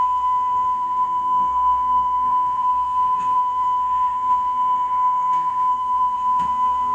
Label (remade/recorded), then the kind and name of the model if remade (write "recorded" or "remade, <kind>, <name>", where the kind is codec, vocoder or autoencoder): remade, codec, SNAC